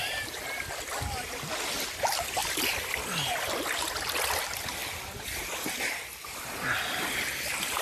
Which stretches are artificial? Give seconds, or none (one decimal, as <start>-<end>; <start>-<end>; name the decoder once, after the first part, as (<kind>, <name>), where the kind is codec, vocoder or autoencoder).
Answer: none